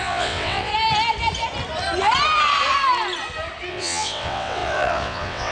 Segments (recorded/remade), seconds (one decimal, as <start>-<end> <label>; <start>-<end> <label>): 0.0-0.7 remade; 0.7-3.7 recorded; 3.7-5.5 remade